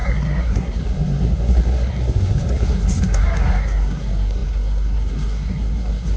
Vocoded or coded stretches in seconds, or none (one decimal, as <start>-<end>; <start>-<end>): 0.0-6.2